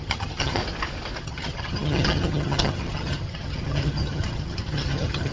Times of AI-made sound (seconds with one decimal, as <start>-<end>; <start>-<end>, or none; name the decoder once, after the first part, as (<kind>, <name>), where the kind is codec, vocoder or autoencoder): 0.0-0.6 (vocoder, HiFi-GAN); 1.2-5.3